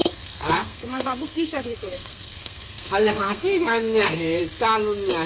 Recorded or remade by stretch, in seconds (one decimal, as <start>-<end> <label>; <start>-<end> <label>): 0.0-4.4 remade; 4.4-5.3 recorded